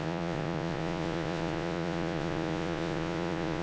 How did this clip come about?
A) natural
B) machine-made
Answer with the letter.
B